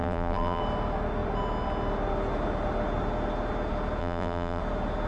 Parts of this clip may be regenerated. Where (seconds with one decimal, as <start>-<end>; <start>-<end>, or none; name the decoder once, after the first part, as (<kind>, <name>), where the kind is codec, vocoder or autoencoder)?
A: 0.0-0.6 (vocoder, BigVGAN v2); 4.0-4.6